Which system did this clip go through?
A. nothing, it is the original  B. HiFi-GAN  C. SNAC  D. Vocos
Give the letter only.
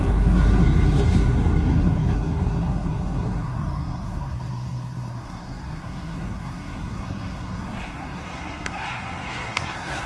C